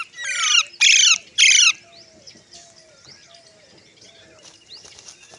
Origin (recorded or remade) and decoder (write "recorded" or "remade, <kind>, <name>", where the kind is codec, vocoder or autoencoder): recorded